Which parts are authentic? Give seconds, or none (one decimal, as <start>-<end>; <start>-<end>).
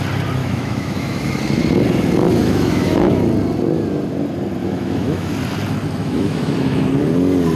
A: 0.0-0.4; 1.4-2.4; 3.2-4.6; 5.3-6.0; 6.9-7.6